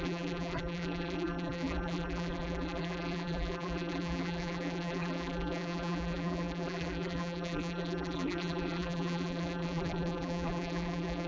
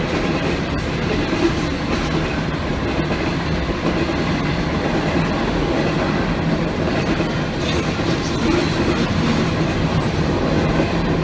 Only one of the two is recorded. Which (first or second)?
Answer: second